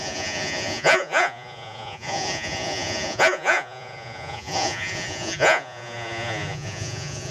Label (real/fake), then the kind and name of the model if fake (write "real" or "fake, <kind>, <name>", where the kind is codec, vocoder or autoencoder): fake, vocoder, Vocos